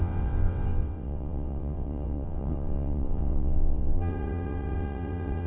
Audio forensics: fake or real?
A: fake